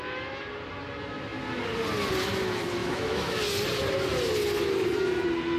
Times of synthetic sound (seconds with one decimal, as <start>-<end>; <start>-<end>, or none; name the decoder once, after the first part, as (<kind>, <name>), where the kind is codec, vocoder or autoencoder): 2.8-3.4 (autoencoder, DAC-VAE)